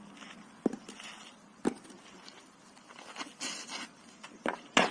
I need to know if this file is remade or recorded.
recorded